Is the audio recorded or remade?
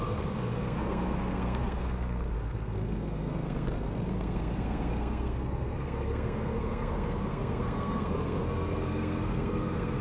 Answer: remade